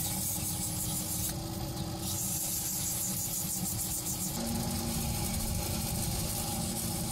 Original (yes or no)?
yes